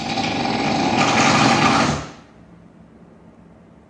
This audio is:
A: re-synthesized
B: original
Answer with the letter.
B